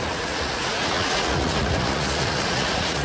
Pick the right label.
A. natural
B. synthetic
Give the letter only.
B